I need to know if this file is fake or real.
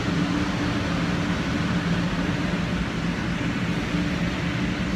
real